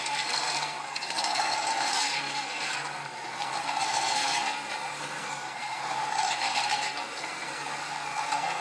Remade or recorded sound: remade